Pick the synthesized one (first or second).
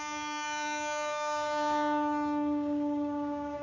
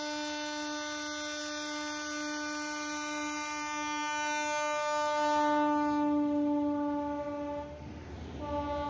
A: first